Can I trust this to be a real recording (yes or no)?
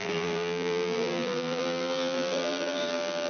no